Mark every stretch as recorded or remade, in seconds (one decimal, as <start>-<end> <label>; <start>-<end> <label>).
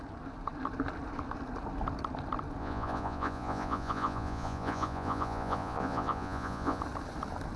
0.0-2.6 recorded; 2.6-6.8 remade; 6.8-7.6 recorded